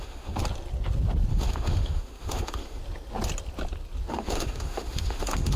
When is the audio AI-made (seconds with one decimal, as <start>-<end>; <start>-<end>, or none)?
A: 0.0-0.4; 1.3-2.8; 4.1-5.6